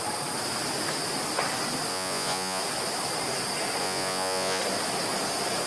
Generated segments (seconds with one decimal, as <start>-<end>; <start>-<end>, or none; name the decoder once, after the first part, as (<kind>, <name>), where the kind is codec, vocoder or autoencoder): 1.9-2.6 (vocoder, Vocos); 3.8-4.6